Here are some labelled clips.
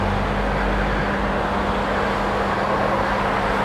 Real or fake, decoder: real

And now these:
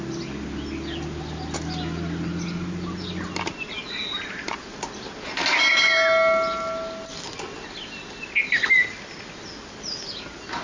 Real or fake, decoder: real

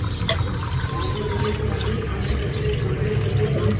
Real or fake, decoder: real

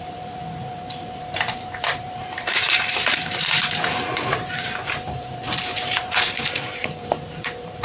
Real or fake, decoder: fake, vocoder, BigVGAN v2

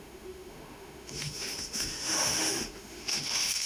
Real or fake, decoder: fake, autoencoder, DAC-VAE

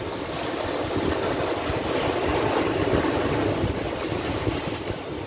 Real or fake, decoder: real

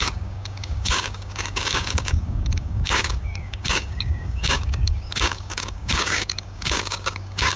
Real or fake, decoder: fake, codec, DAC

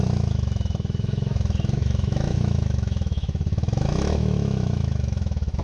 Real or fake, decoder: fake, autoencoder, DAC-VAE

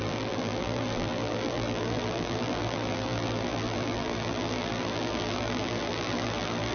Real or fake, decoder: fake, vocoder, BigVGAN v2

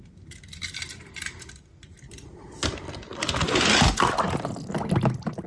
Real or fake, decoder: real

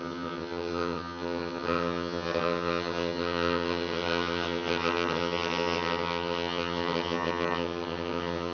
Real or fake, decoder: fake, vocoder, HiFi-GAN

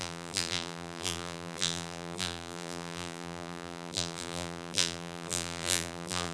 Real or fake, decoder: fake, vocoder, BigVGAN v2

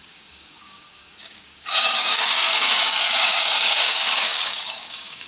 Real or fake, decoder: fake, codec, DAC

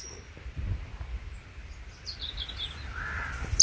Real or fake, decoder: real